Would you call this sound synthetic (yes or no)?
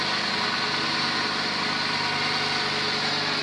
no